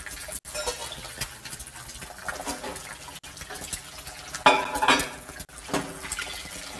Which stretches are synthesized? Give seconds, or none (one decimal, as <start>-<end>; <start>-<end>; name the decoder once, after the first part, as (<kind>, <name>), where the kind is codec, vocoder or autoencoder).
0.8-3.0 (vocoder, BigVGAN v2)